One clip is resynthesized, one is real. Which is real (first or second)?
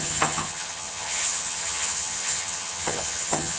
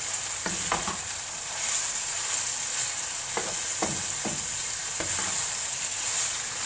second